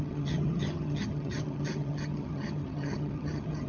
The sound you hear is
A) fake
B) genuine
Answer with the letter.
A